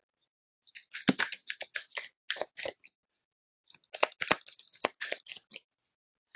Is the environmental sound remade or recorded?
recorded